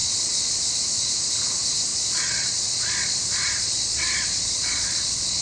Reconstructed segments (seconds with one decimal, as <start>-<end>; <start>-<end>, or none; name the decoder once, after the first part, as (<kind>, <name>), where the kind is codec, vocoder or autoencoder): 0.0-0.6 (vocoder, Vocos); 1.9-5.4